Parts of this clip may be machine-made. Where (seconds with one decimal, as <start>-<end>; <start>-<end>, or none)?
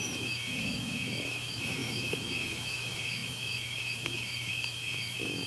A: 0.0-5.5